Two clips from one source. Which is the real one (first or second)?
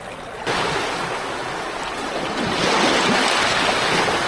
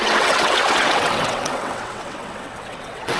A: first